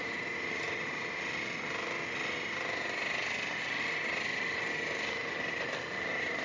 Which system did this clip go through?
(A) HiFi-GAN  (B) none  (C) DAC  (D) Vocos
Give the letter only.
B